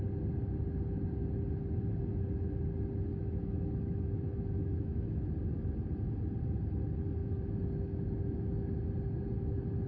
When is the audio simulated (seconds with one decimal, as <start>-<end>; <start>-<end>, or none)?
3.1-5.2; 7.2-8.7